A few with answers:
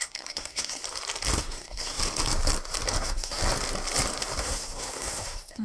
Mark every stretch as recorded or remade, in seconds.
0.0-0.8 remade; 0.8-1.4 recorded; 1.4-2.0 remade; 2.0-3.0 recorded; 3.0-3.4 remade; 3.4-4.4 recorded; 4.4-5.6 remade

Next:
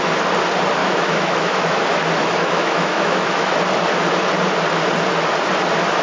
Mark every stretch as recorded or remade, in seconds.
0.0-0.8 recorded; 0.8-1.8 remade; 1.8-2.2 recorded; 2.2-3.5 remade; 3.5-6.0 recorded

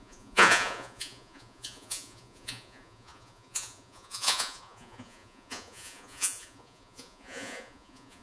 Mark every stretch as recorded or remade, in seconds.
0.0-8.2 remade

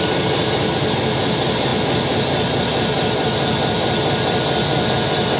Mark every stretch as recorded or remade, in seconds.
0.0-5.4 recorded

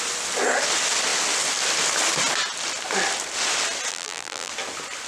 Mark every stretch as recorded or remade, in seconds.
0.0-3.9 recorded; 3.9-4.5 remade; 4.5-5.1 recorded

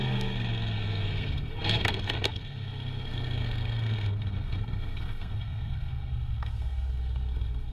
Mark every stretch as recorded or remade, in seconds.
0.0-7.7 remade

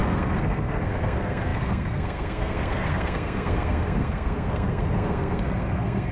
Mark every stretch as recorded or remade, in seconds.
0.0-6.1 remade

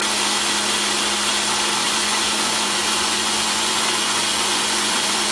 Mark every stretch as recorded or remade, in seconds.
0.0-1.8 recorded; 1.8-5.3 remade